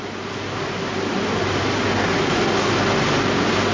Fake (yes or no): no